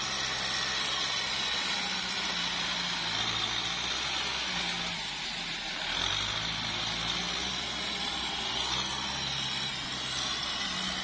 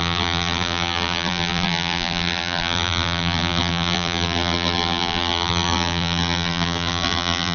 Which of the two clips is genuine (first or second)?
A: first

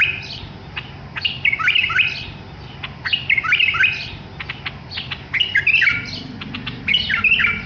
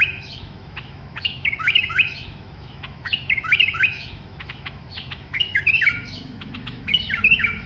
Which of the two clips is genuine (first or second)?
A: first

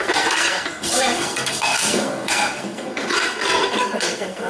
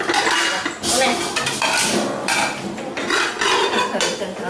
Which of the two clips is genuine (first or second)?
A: second